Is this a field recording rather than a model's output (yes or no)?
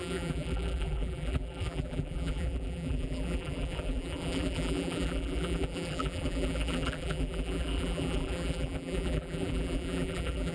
no